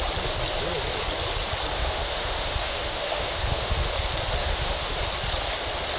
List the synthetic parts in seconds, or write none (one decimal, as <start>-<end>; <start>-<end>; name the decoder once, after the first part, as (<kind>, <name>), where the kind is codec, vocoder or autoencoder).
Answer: 1.7-3.9 (autoencoder, DAC-VAE); 4.4-5.0